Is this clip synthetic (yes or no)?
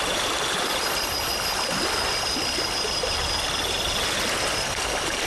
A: no